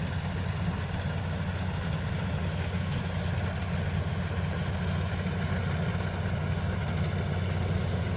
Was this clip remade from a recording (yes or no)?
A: no